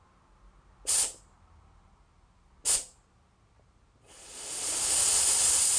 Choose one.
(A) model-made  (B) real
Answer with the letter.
B